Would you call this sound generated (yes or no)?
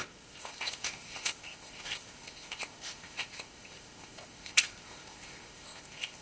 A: yes